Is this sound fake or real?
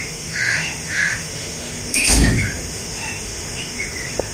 fake